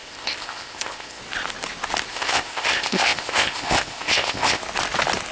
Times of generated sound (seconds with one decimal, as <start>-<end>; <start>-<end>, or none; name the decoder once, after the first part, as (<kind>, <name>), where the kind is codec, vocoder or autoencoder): 0.0-1.2 (codec, ZipCodec); 2.1-4.6